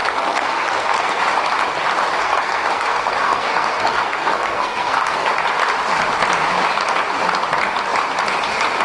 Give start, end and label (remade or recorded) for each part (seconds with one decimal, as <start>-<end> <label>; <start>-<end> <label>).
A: 0.0-1.2 remade; 1.2-2.2 recorded; 2.2-5.3 remade; 5.3-8.8 recorded